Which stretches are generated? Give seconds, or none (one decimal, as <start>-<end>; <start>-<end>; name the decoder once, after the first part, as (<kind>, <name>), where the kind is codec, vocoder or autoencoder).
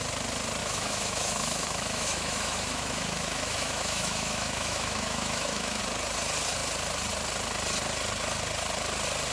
0.6-5.8 (autoencoder, DAC-VAE)